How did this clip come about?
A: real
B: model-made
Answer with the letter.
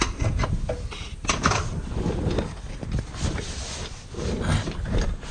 A